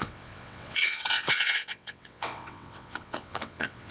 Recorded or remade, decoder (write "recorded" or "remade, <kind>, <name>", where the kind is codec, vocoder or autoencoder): remade, vocoder, WaveNeXt